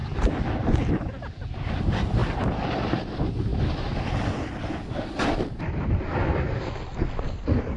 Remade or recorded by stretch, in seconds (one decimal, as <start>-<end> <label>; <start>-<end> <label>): 0.0-7.8 recorded